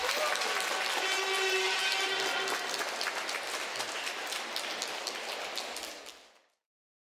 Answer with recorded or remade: recorded